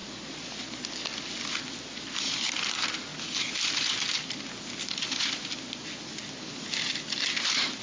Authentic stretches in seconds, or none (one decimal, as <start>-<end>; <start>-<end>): 0.0-2.2; 3.1-5.2; 6.1-7.1